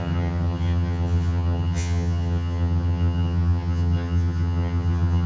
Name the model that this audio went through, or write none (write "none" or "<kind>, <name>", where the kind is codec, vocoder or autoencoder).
vocoder, HiFi-GAN